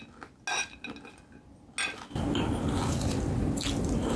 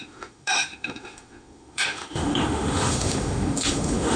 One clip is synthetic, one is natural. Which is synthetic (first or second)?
second